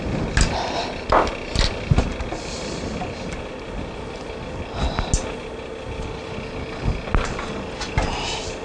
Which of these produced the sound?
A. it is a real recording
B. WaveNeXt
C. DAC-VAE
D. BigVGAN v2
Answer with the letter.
A